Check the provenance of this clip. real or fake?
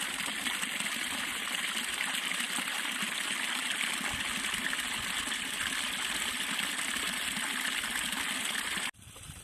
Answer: real